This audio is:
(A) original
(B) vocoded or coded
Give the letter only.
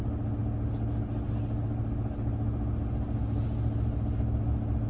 A